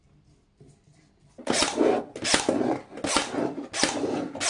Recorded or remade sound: recorded